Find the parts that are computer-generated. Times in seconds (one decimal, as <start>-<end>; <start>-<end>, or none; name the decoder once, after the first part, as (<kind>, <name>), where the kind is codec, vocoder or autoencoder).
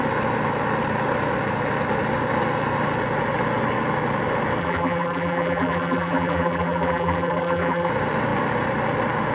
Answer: 4.6-7.9 (vocoder, BigVGAN v2)